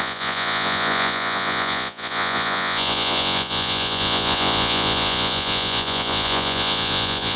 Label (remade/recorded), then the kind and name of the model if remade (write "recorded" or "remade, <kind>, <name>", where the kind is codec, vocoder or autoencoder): remade, vocoder, Vocos